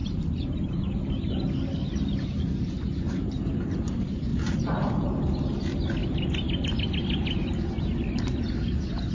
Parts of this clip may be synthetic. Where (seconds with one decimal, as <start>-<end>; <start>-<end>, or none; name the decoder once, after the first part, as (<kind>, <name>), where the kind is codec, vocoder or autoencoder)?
0.0-1.4 (vocoder, BigVGAN v2); 4.3-4.9